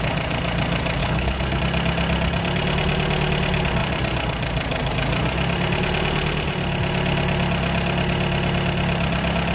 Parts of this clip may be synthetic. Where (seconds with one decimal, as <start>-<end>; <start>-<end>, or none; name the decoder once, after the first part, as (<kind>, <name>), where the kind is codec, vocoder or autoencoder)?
1.0-1.6 (codec, HILCodec)